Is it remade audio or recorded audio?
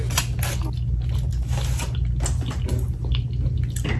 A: recorded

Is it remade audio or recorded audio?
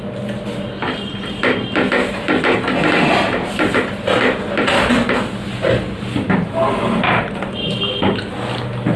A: recorded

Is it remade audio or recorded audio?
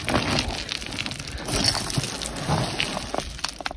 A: recorded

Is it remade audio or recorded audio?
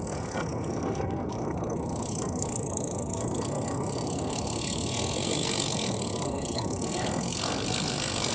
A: remade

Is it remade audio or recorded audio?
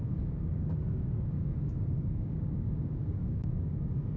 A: remade